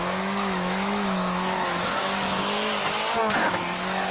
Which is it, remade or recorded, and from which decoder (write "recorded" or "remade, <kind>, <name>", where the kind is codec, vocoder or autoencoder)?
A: remade, autoencoder, DAC-VAE